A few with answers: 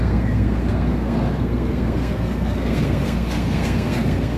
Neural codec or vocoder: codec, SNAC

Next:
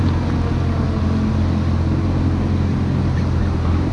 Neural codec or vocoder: none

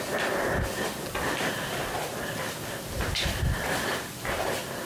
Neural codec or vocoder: none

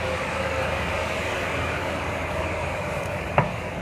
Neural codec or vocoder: codec, DAC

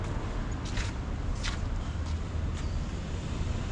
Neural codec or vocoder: none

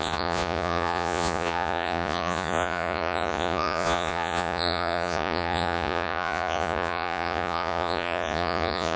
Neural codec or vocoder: vocoder, Vocos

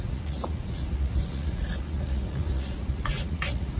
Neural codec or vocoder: vocoder, Vocos